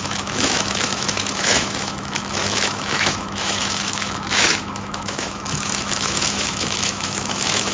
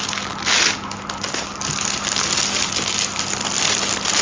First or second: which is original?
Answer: second